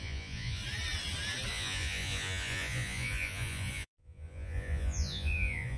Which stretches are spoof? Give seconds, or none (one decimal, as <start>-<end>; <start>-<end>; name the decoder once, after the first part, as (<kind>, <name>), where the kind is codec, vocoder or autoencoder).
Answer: 0.0-0.6 (vocoder, Vocos); 1.5-5.8

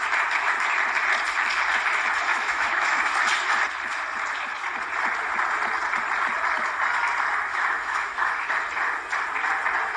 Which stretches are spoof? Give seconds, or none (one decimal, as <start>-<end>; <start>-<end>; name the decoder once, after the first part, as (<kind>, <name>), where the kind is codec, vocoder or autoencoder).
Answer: 2.3-3.1 (autoencoder, DAC-VAE); 7.5-8.5